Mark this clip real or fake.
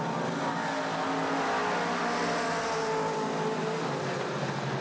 real